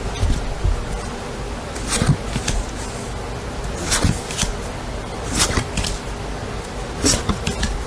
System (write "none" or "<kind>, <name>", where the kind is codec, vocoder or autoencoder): none